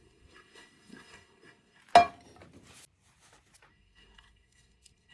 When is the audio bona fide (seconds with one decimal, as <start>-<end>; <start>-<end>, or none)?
1.8-3.7

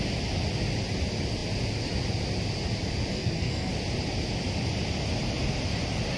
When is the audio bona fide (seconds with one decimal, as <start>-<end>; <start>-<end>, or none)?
0.0-3.1; 3.7-6.2

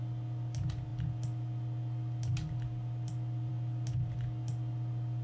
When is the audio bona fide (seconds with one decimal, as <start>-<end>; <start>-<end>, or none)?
0.0-5.2

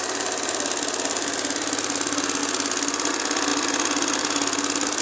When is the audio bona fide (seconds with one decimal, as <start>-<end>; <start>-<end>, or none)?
0.0-5.0

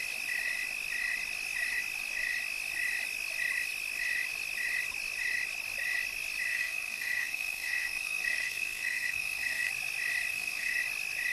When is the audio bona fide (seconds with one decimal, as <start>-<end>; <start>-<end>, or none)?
0.0-6.5; 9.7-10.3; 10.8-11.3